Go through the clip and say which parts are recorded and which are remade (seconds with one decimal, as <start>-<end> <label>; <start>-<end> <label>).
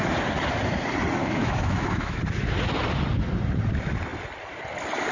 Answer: 0.0-1.2 recorded; 1.2-2.2 remade; 2.2-5.1 recorded